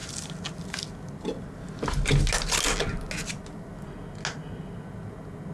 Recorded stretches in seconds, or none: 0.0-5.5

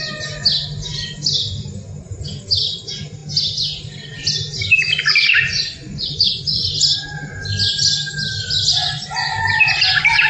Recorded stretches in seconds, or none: 0.0-5.3; 6.7-10.3

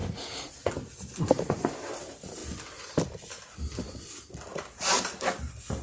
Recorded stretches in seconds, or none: 0.7-5.8

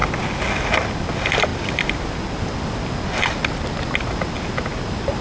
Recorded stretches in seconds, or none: 0.0-5.2

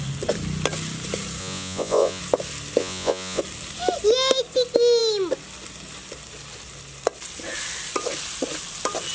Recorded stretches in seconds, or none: 0.0-1.4; 2.2-2.8; 3.4-9.1

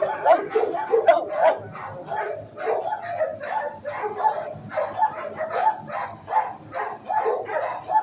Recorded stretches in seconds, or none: 0.0-8.0